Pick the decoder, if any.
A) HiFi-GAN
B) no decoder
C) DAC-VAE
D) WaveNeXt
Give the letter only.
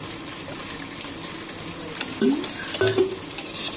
B